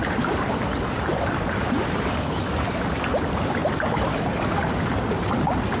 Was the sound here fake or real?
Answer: real